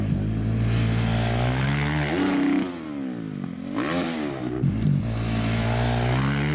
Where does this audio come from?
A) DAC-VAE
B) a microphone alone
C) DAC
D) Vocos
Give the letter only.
B